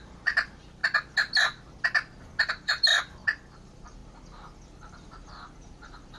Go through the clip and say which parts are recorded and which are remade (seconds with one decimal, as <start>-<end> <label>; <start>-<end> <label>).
0.0-0.8 remade; 0.8-2.5 recorded; 2.5-2.9 remade; 2.9-3.5 recorded; 3.5-4.0 remade; 4.0-5.1 recorded; 5.1-6.2 remade